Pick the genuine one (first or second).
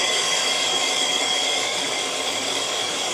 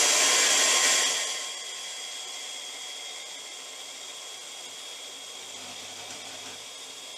second